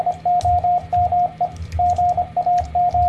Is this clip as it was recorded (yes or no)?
yes